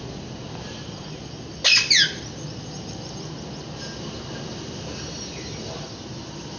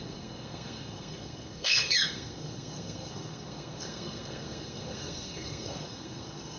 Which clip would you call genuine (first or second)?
first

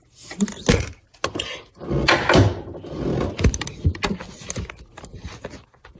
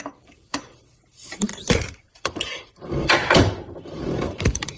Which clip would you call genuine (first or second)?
first